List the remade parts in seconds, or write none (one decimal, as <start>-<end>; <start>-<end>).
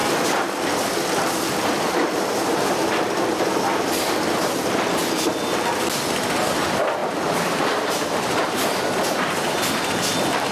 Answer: 0.0-5.1; 7.0-9.7